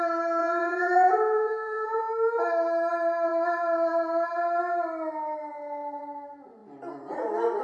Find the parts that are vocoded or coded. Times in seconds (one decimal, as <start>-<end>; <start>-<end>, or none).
0.4-2.0